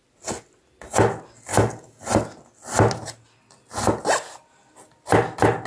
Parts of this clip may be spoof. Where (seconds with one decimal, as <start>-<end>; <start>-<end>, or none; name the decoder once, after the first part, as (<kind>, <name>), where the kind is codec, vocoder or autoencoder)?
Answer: 1.5-2.0 (codec, DAC)